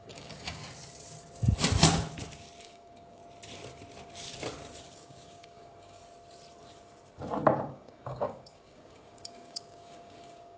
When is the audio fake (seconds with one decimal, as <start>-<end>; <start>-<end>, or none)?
0.0-0.6; 2.6-3.2; 4.9-6.0; 7.6-10.6